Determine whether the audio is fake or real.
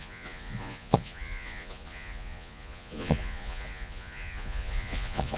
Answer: fake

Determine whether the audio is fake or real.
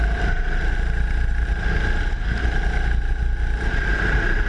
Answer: real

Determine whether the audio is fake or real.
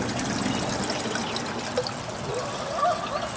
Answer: real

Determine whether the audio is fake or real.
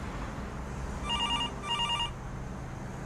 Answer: real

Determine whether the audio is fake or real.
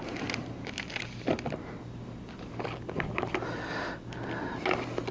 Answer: real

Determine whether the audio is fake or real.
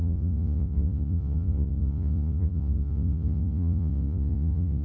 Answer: fake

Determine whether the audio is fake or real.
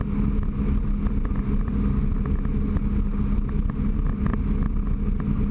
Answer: real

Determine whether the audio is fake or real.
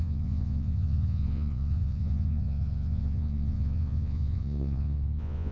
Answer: fake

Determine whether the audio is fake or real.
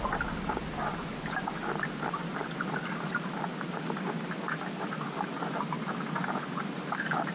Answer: real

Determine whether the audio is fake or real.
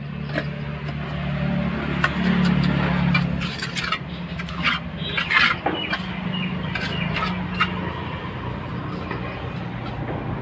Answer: real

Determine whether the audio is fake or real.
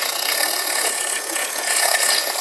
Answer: fake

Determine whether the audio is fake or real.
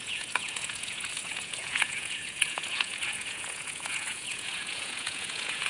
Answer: fake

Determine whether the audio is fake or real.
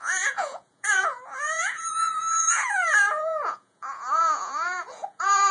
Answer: fake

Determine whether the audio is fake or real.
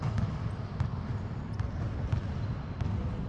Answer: real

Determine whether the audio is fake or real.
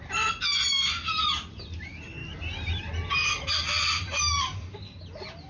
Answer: real